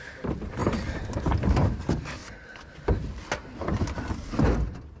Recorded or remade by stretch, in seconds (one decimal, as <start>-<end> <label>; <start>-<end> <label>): 0.0-2.2 remade; 2.2-5.0 recorded